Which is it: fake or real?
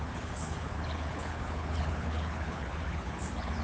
fake